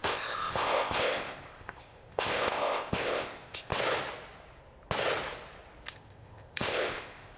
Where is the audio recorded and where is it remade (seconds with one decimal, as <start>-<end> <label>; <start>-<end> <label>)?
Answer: 0.0-3.7 remade; 3.7-5.9 recorded; 5.9-7.4 remade

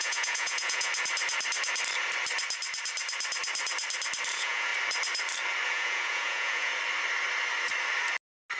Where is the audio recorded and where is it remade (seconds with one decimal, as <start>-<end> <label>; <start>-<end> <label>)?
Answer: 0.0-0.9 remade; 0.9-4.3 recorded; 4.3-4.7 remade; 4.7-5.7 recorded; 5.7-6.7 remade; 6.7-8.6 recorded

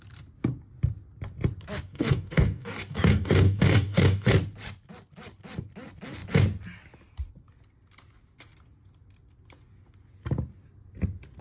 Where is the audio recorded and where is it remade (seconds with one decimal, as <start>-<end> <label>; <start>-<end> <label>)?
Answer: 0.0-1.9 recorded; 1.9-4.3 remade; 4.3-11.4 recorded

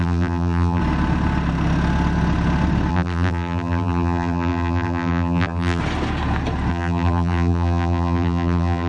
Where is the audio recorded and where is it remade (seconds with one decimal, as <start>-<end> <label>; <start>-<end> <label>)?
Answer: 0.0-0.8 remade; 0.8-2.9 recorded; 2.9-5.8 remade; 5.8-6.7 recorded; 6.7-8.9 remade

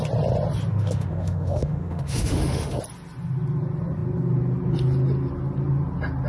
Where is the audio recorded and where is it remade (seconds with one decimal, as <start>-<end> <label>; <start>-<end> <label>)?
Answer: 0.0-0.7 recorded; 0.7-2.8 remade; 2.8-6.3 recorded